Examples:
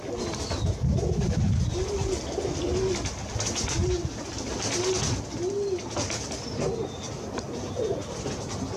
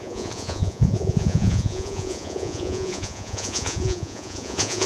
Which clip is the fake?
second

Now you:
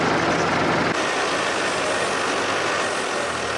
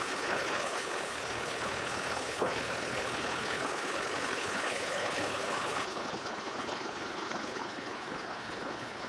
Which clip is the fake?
second